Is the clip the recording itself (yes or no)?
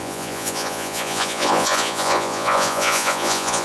no